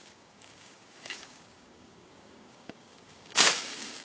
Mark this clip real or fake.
fake